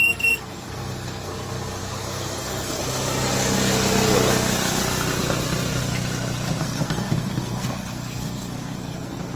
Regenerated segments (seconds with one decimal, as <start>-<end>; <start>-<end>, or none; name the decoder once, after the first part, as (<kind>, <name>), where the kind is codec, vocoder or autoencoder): 0.0-1.3 (codec, SNAC); 2.0-2.8; 6.6-9.4